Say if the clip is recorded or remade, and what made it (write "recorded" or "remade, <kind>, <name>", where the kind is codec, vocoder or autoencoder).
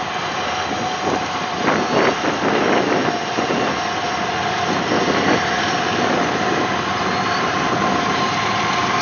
recorded